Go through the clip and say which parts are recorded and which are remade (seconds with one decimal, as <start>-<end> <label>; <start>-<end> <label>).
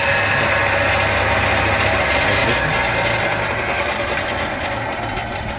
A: 0.0-5.6 recorded